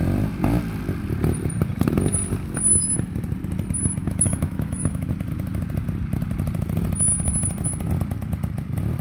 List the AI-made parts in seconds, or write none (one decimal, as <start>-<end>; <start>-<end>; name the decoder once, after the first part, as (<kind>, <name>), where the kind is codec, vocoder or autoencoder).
4.0-5.1 (autoencoder, DAC-VAE)